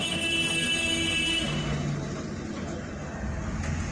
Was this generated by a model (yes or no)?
no